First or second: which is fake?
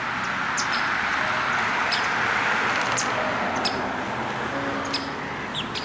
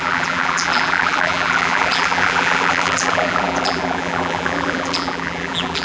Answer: second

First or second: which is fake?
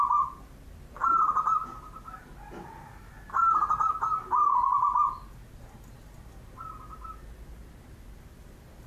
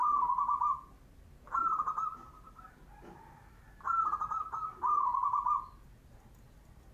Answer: second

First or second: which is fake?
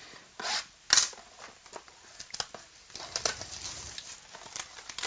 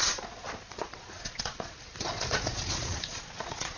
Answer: second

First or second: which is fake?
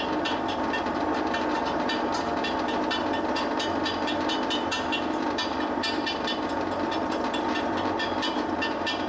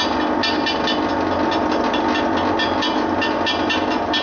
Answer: first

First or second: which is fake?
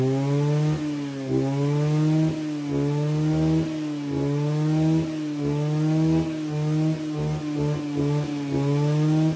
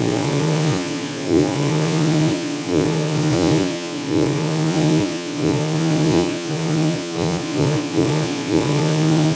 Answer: second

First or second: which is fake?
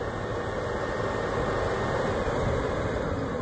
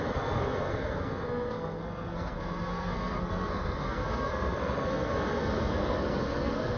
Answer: second